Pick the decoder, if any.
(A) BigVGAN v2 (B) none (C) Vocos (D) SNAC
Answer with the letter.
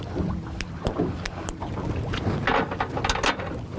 B